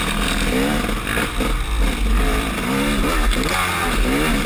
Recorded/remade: recorded